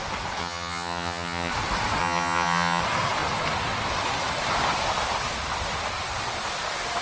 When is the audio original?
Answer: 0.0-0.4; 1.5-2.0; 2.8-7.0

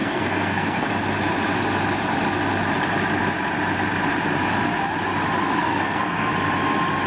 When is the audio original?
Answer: 0.9-5.6; 6.3-7.1

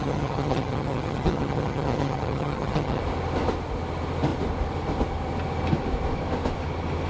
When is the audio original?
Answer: 3.0-7.1

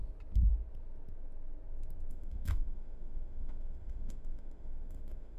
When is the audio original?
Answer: 0.0-2.1

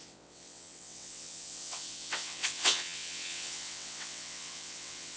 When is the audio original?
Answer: none

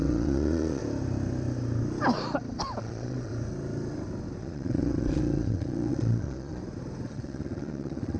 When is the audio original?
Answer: 0.8-2.8; 3.3-4.4; 6.6-7.1